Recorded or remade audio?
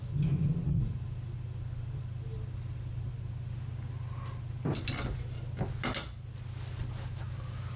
recorded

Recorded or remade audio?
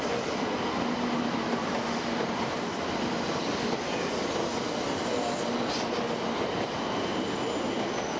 recorded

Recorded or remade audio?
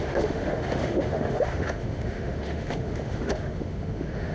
remade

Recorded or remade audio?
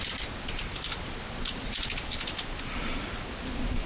recorded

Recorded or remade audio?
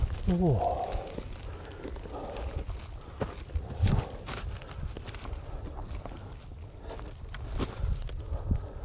recorded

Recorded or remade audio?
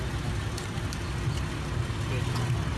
recorded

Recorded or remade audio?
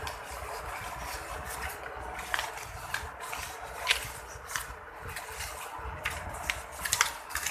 recorded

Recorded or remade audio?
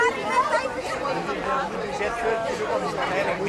remade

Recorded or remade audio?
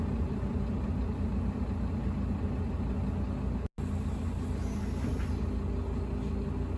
recorded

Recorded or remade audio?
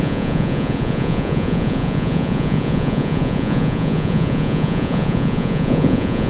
remade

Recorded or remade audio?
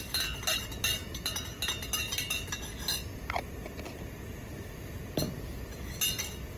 recorded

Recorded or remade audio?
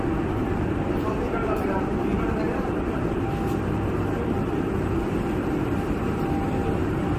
remade